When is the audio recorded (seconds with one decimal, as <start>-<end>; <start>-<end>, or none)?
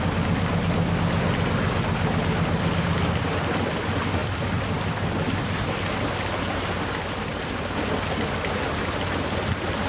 0.0-9.9